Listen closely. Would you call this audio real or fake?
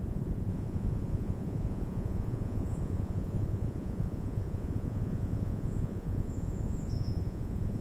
fake